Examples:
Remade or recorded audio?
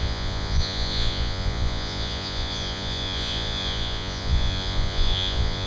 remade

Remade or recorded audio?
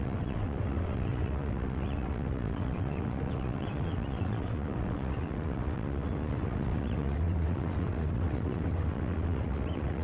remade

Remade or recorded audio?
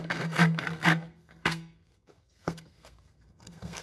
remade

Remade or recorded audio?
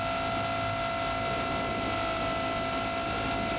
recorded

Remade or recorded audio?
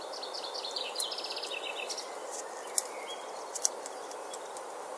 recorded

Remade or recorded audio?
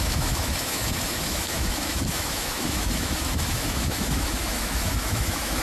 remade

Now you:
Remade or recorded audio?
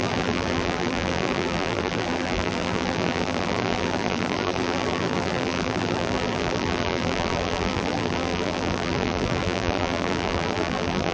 remade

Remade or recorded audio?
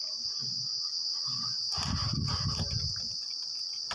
recorded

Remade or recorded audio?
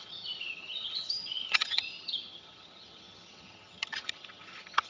remade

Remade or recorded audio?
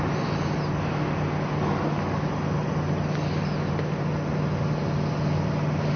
recorded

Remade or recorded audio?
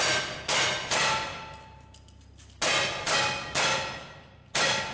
recorded